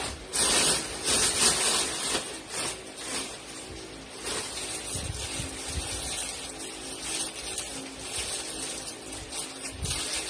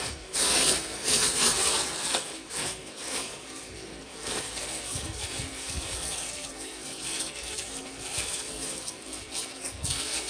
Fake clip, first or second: second